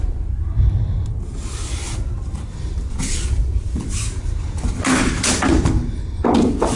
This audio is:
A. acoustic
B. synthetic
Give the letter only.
A